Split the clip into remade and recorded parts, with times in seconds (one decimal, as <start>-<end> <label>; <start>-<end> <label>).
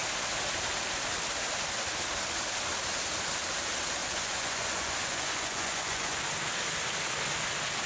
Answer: 0.0-4.0 recorded; 4.0-6.2 remade; 6.2-7.9 recorded